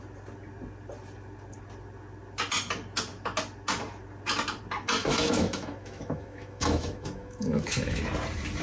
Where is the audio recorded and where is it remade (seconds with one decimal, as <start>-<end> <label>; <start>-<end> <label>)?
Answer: 0.0-5.0 recorded; 5.0-8.0 remade; 8.0-8.6 recorded